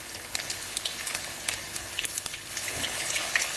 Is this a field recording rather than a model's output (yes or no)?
no